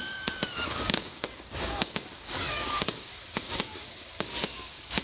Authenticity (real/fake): fake